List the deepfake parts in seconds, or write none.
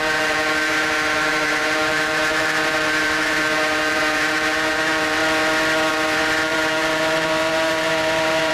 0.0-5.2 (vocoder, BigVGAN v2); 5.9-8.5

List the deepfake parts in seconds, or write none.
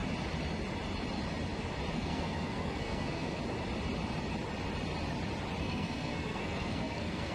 1.9-3.4 (codec, SNAC); 5.6-7.3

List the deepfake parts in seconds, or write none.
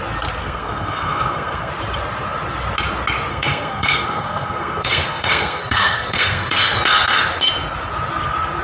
0.4-1.7 (codec, SNAC); 3.3-7.2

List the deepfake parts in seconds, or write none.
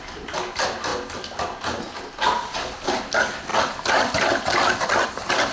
3.5-4.2 (vocoder, BigVGAN v2)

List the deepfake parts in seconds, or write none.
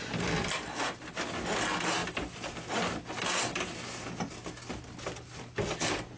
none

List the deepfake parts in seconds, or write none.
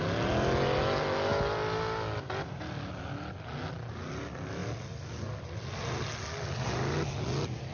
none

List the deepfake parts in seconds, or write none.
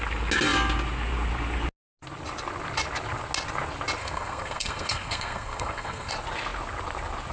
4.0-6.1 (codec, SNAC)